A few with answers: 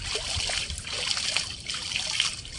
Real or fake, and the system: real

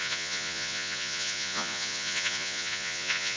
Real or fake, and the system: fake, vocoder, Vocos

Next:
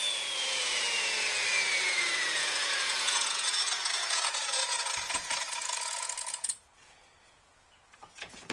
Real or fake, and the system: fake, vocoder, Vocos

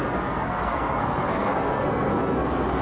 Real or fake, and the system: fake, codec, SNAC